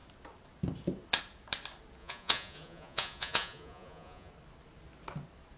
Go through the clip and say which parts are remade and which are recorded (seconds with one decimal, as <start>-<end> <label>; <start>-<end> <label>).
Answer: 0.0-2.0 recorded; 2.0-4.3 remade; 4.3-5.6 recorded